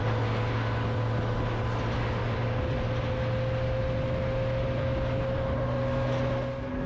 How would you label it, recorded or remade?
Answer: recorded